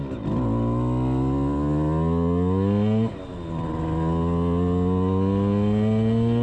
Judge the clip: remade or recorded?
recorded